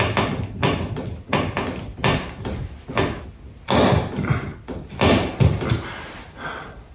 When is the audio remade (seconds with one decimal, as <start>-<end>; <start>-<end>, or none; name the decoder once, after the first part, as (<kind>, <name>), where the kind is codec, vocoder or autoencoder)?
none